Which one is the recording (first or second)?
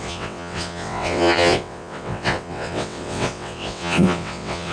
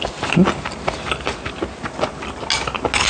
second